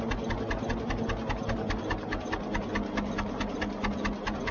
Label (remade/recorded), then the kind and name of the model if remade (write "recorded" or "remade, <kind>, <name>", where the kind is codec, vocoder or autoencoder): recorded